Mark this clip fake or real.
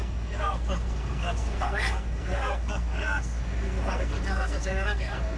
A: fake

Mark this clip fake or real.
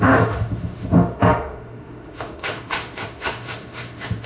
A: fake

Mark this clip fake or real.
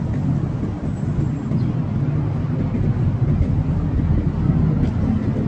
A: real